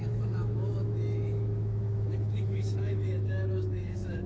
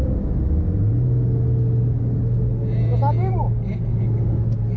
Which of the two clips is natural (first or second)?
second